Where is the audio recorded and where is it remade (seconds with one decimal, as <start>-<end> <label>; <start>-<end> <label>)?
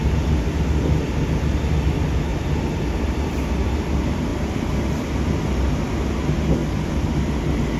0.0-2.3 recorded; 2.3-3.4 remade; 3.4-4.3 recorded; 4.3-5.9 remade; 5.9-6.6 recorded; 6.6-7.8 remade